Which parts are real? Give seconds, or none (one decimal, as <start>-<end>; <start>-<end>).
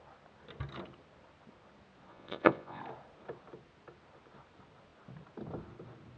0.0-2.1; 2.8-6.2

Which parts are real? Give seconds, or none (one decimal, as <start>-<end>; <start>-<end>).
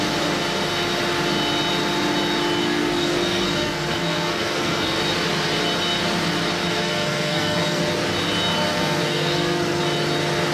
0.0-2.6; 5.0-6.7; 7.8-8.7; 9.8-10.5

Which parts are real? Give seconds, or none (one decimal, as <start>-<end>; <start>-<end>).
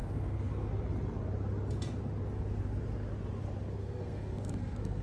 0.7-3.8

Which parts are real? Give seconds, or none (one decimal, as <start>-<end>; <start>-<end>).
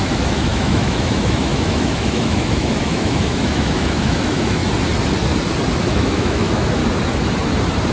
4.6-5.9; 6.8-7.9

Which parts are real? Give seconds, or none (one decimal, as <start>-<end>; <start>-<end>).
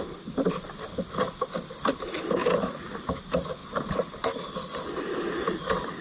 2.4-3.2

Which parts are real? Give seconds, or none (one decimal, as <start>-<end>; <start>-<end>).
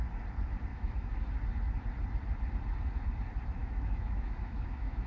0.0-0.7; 1.2-3.6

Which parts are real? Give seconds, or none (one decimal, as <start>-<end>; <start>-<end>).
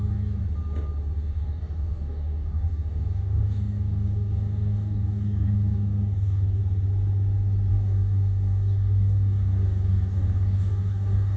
0.4-1.0; 6.6-7.7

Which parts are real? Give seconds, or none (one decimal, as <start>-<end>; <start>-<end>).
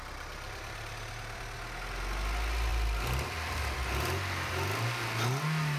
0.0-2.7; 3.6-5.8